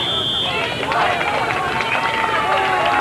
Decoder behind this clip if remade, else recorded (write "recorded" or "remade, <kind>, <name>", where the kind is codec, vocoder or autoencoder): recorded